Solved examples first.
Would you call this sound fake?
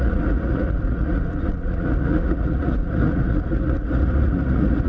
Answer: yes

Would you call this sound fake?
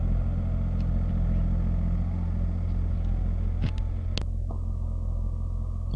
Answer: no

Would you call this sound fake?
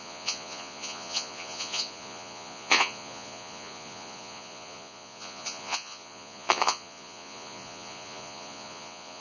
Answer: yes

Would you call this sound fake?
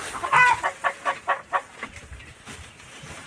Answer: yes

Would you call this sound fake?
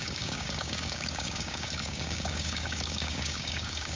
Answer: yes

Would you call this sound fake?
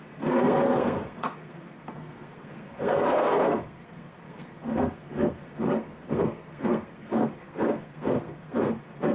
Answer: yes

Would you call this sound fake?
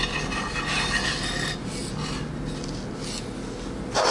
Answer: no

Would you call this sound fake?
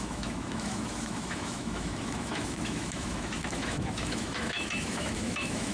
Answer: yes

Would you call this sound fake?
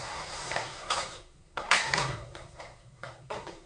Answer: yes